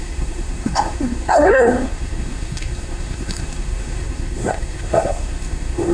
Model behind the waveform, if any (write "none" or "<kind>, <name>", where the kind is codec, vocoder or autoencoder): codec, SNAC